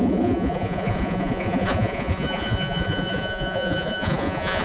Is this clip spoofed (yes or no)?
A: yes